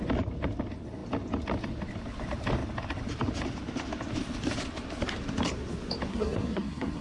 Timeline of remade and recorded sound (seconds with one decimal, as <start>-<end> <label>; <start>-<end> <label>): 0.0-6.1 recorded; 6.1-7.0 remade